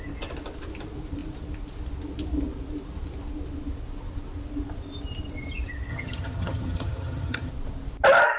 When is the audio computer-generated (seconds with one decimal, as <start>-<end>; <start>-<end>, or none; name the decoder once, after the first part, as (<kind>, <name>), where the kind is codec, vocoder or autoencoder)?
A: 5.9-7.5 (vocoder, HiFi-GAN)